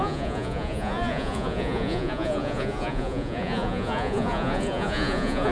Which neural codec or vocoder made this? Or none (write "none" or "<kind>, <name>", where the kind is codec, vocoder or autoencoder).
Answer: vocoder, Vocos